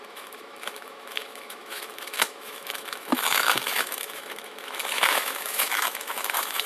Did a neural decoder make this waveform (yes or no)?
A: yes